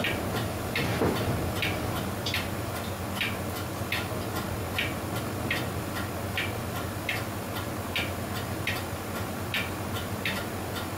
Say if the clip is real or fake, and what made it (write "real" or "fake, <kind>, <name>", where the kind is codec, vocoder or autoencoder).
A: real